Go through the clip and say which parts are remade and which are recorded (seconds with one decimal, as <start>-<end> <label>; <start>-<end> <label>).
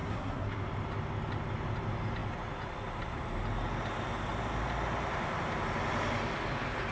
0.0-0.6 remade; 0.6-6.9 recorded